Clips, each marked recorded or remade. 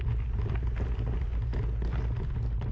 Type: recorded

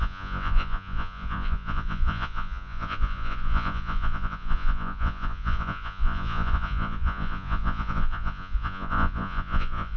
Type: remade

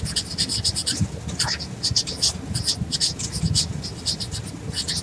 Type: recorded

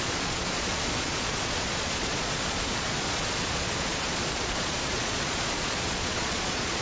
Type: remade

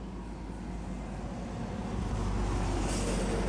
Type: recorded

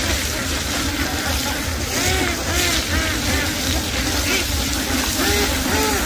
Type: recorded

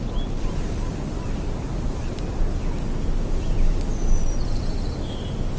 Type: recorded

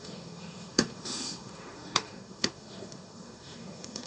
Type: remade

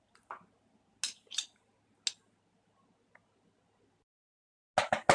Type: recorded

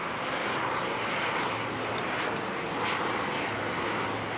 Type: recorded